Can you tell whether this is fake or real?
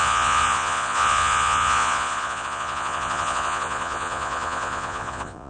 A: fake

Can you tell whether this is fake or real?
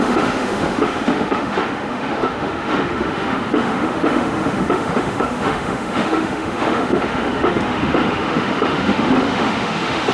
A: fake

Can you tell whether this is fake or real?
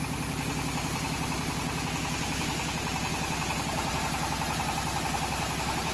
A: real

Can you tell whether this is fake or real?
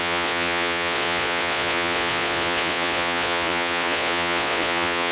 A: fake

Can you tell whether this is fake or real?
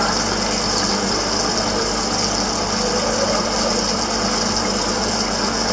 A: real